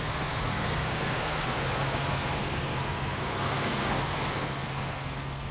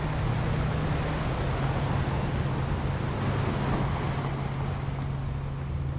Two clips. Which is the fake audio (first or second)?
first